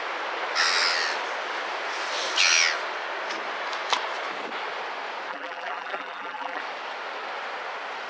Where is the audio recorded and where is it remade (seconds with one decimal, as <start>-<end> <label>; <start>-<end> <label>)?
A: 0.0-5.3 recorded; 5.3-6.6 remade; 6.6-8.1 recorded

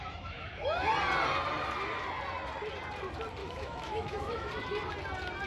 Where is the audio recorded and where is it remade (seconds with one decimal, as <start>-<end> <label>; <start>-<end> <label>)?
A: 0.0-0.9 remade; 0.9-3.4 recorded; 3.4-4.5 remade; 4.5-5.5 recorded

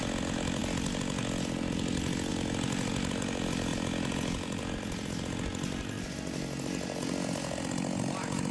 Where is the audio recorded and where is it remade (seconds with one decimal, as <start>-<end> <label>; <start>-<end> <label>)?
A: 0.0-8.5 recorded

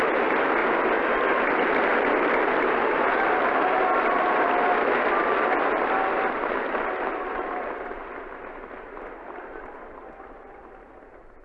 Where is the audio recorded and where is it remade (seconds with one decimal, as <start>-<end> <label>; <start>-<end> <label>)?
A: 0.0-0.6 remade; 0.6-5.9 recorded; 5.9-11.4 remade

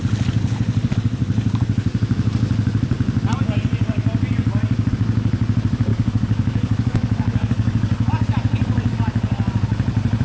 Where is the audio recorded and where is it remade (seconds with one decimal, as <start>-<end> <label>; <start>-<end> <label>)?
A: 0.0-5.9 recorded; 5.9-8.1 remade; 8.1-10.2 recorded

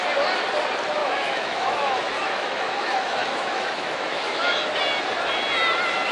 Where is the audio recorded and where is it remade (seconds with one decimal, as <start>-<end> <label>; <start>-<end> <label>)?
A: 0.0-1.0 recorded; 1.0-4.7 remade; 4.7-6.1 recorded

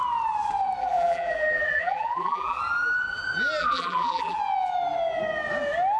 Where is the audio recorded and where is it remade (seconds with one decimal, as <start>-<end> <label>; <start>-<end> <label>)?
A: 0.0-0.8 recorded; 0.8-2.6 remade; 2.6-3.6 recorded; 3.6-4.4 remade; 4.4-6.0 recorded